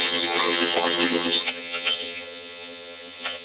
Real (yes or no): no